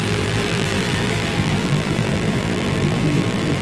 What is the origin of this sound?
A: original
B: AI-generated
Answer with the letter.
B